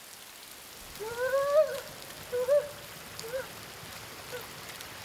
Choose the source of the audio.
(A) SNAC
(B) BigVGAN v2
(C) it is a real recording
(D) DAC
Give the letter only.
C